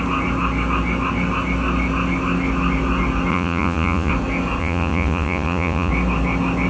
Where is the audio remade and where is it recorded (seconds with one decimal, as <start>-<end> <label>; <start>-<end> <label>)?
0.0-3.3 recorded; 3.3-4.1 remade; 4.1-4.6 recorded; 4.6-5.9 remade; 5.9-6.7 recorded